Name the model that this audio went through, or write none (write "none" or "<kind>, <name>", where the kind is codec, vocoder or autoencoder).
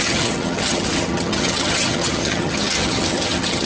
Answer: vocoder, HiFi-GAN